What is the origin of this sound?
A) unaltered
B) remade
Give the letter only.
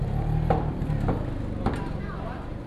A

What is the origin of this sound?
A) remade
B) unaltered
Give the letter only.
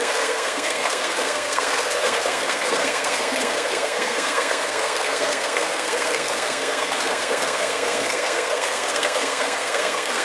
A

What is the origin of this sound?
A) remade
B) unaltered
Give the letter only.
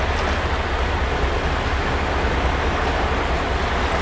B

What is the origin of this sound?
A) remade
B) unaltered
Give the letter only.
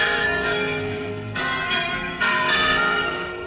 A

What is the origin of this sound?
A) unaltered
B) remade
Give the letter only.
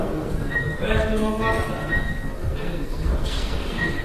B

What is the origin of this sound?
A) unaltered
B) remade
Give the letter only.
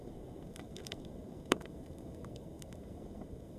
B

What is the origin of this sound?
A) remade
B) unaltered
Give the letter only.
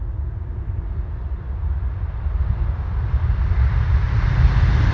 B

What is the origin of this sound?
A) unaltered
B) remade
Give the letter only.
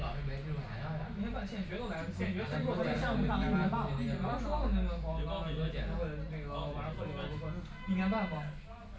A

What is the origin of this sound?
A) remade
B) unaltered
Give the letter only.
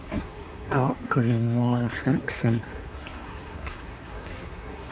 A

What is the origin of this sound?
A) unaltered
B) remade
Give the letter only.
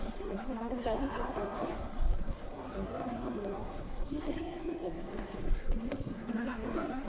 B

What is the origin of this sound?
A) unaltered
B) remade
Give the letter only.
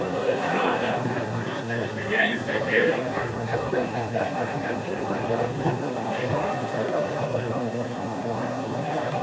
B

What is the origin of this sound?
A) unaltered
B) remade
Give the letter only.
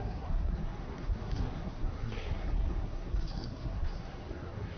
B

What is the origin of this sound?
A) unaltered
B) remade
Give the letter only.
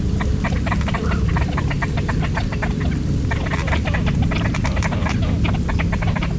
A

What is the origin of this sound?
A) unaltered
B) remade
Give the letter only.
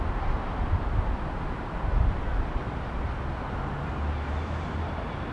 A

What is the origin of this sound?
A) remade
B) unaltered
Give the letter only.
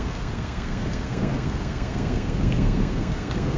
A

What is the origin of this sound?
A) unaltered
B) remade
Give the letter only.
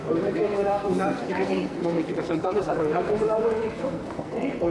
B